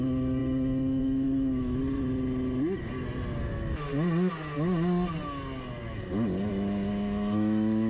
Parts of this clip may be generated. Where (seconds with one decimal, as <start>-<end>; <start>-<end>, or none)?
0.0-1.8; 3.5-3.9; 6.5-7.9